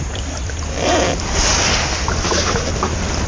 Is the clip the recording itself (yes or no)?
yes